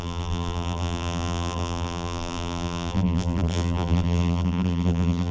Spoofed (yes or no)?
yes